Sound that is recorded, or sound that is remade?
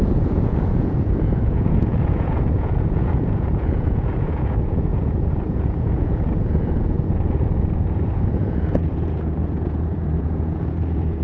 remade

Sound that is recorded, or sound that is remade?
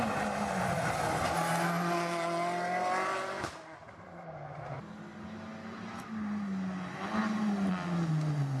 recorded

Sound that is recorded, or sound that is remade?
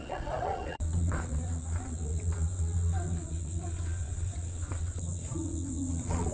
remade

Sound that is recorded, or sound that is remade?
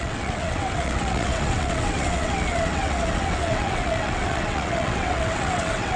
remade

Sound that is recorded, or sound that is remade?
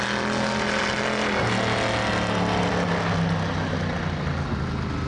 recorded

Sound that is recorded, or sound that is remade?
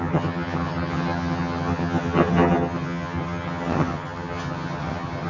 remade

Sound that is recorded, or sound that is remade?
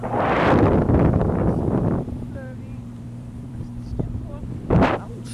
remade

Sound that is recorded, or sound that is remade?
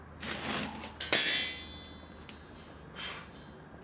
recorded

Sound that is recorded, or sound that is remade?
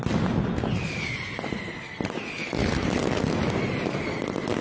recorded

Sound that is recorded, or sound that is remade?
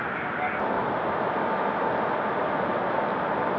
recorded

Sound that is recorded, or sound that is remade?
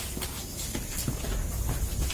recorded